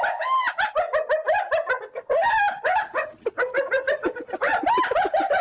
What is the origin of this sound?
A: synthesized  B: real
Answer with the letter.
B